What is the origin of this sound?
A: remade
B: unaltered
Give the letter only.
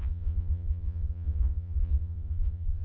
A